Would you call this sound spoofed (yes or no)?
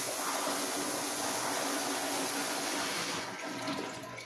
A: yes